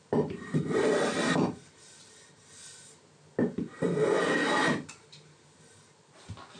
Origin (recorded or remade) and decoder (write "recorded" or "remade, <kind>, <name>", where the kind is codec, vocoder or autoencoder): recorded